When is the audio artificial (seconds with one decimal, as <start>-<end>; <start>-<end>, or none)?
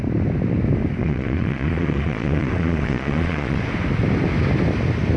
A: 1.0-3.6